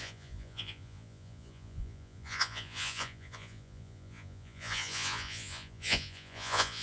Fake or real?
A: fake